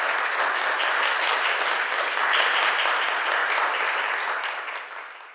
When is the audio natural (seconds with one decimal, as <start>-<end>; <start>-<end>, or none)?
0.0-5.3